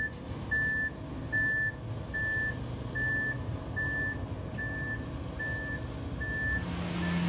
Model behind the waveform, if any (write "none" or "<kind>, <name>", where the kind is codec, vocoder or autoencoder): none